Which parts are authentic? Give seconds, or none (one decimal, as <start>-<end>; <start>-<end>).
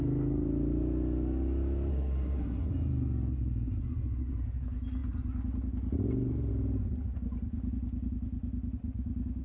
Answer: 0.0-1.9; 2.7-9.4